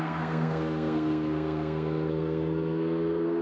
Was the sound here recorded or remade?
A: remade